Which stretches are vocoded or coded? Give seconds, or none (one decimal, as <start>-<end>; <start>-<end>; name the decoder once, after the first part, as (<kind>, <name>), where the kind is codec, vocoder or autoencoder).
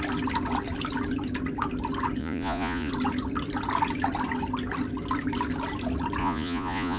2.2-2.9 (vocoder, Vocos); 6.2-7.0